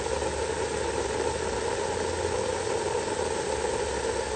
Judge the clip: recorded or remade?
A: recorded